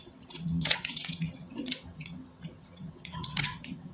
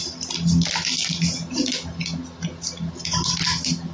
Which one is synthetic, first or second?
first